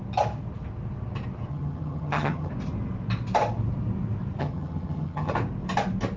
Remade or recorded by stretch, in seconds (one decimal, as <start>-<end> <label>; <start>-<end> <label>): 0.0-1.5 recorded; 1.5-2.5 remade; 2.5-4.4 recorded; 4.4-5.3 remade; 5.3-6.2 recorded